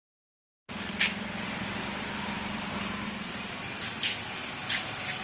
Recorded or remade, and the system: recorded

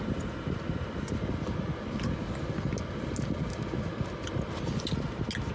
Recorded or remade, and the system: recorded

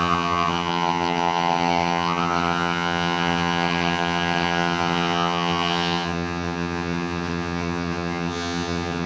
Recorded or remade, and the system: remade, vocoder, HiFi-GAN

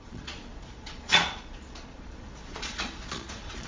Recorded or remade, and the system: remade, vocoder, Vocos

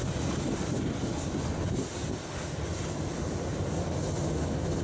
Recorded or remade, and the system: recorded